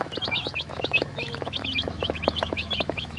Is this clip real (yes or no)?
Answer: no